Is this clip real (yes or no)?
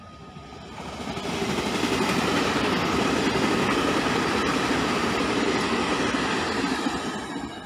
yes